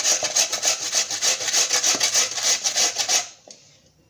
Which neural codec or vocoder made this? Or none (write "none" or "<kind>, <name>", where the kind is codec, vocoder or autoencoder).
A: none